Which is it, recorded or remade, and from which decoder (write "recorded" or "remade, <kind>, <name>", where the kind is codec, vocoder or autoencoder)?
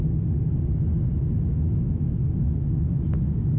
recorded